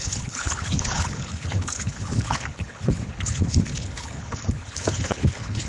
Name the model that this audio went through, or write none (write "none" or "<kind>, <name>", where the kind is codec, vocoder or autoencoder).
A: codec, HILCodec